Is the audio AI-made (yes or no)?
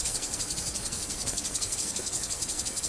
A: yes